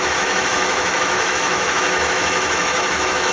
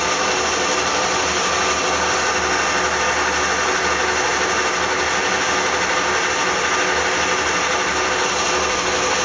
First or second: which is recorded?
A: second